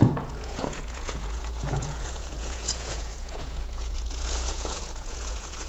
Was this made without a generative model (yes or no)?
no